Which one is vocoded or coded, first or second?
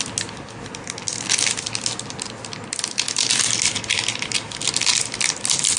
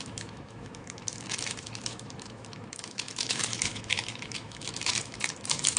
second